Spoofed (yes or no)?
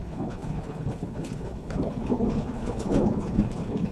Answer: yes